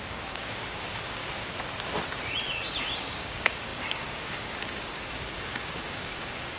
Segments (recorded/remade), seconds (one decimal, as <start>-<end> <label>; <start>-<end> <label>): 0.0-1.2 remade; 1.2-3.0 recorded; 3.0-6.6 remade